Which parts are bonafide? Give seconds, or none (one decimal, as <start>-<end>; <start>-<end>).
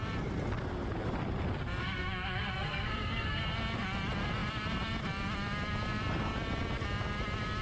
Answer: 0.0-1.8; 3.4-7.6